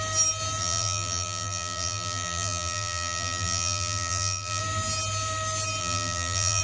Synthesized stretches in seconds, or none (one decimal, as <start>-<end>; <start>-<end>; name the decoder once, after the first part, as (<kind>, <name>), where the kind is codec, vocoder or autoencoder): 0.6-4.6 (vocoder, BigVGAN v2); 5.8-6.6